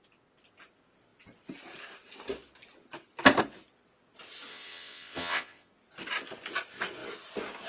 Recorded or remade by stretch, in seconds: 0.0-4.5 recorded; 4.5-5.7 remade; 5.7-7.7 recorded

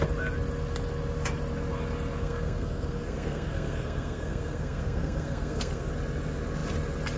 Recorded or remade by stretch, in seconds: 0.0-2.2 recorded; 2.2-5.9 remade; 5.9-7.2 recorded